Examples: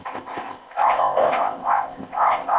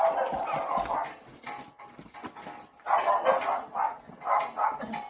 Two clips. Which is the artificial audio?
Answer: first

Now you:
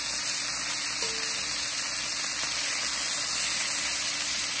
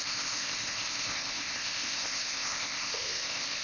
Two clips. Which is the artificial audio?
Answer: second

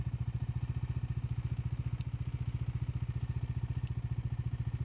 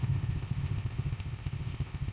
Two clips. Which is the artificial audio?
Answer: second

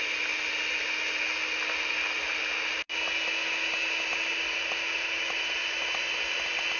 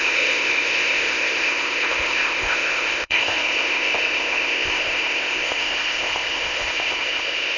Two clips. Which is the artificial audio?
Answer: second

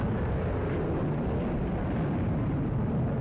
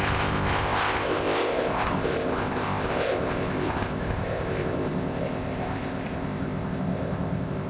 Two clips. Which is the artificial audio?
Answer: second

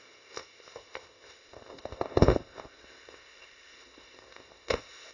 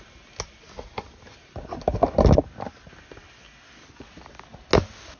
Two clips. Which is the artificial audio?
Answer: first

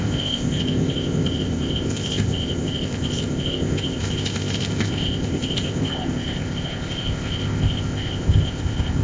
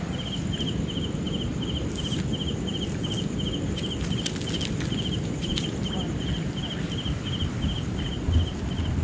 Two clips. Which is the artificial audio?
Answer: first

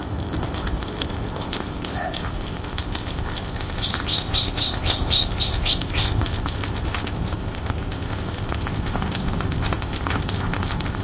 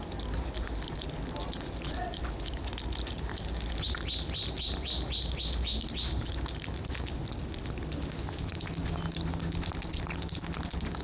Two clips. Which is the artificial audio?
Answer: first